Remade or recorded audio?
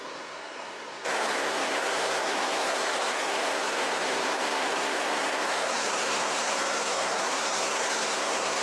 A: remade